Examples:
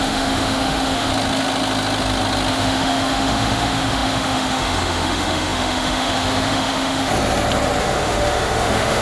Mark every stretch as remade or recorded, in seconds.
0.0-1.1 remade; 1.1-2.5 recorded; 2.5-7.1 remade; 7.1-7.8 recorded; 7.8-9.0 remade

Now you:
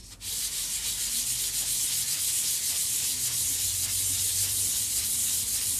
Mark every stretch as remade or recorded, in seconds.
0.0-5.8 recorded

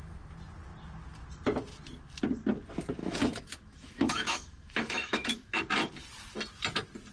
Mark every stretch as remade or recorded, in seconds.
0.0-3.0 recorded; 3.0-5.6 remade; 5.6-7.1 recorded